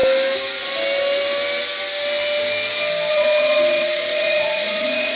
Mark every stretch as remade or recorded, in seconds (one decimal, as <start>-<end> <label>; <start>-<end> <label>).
0.0-3.1 recorded; 3.1-5.2 remade